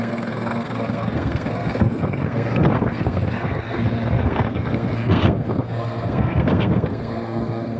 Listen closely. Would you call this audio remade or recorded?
remade